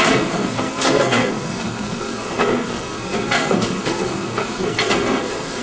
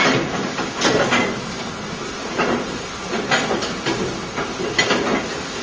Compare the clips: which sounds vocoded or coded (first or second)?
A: first